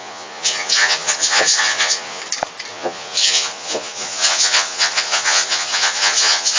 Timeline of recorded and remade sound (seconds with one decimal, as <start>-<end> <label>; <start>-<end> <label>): 0.0-2.2 remade; 2.2-2.7 recorded; 2.7-6.6 remade